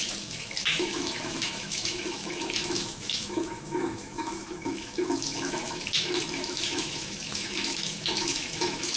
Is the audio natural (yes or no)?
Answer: no